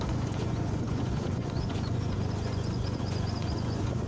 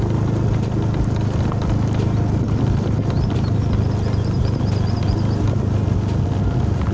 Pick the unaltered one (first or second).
second